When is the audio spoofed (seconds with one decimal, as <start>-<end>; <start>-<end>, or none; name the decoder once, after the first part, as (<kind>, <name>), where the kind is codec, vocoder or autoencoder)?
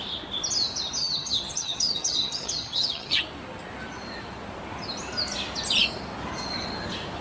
1.0-3.2 (vocoder, HiFi-GAN)